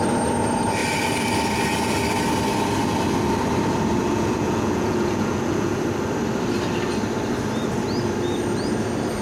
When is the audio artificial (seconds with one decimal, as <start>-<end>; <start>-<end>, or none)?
4.0-5.8